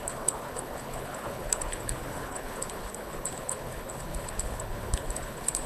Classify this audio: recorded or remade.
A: remade